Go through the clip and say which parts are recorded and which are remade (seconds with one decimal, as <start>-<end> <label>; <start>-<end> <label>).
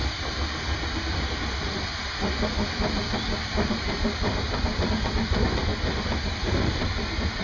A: 0.0-3.7 recorded; 3.7-5.7 remade; 5.7-6.3 recorded; 6.3-7.4 remade